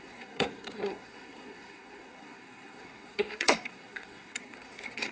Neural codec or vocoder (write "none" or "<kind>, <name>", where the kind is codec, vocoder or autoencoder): codec, SNAC